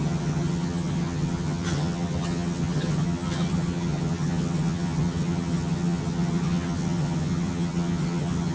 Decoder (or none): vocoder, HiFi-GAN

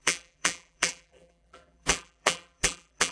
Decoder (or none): vocoder, BigVGAN v2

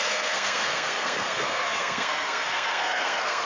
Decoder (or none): codec, SNAC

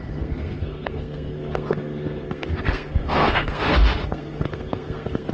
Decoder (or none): codec, SNAC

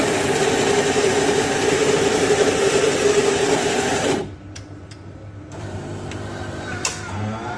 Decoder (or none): vocoder, BigVGAN v2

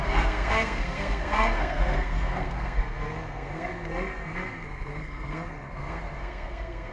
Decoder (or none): codec, SNAC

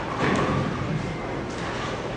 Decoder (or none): none